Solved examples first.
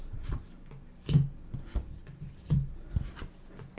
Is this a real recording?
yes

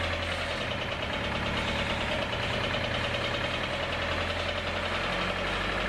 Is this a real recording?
yes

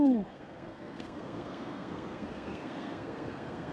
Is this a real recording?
no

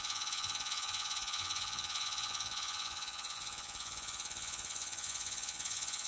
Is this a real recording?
no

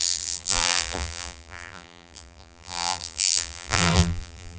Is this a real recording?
no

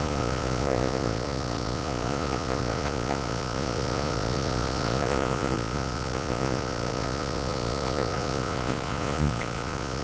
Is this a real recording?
no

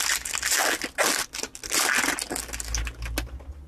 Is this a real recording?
yes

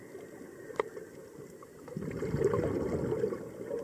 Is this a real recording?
yes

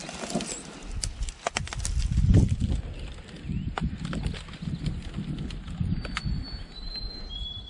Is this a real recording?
yes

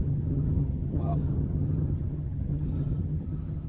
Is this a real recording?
no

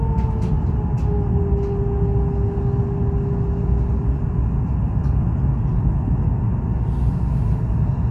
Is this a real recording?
yes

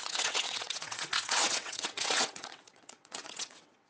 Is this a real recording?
no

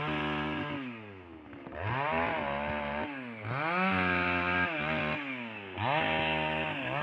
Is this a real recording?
yes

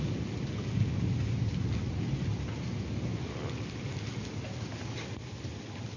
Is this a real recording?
yes